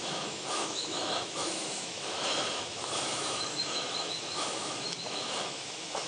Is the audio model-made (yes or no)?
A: yes